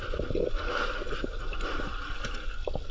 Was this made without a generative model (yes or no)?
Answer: yes